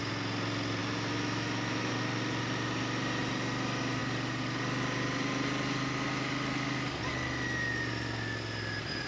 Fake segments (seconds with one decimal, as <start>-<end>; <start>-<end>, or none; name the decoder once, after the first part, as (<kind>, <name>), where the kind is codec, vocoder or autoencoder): 0.8-1.9 (autoencoder, DAC-VAE)